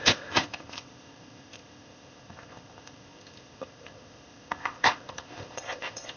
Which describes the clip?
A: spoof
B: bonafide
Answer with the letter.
A